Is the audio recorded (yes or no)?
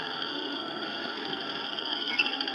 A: no